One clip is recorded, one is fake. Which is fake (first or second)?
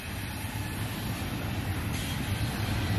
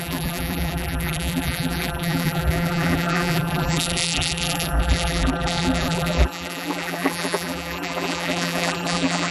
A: second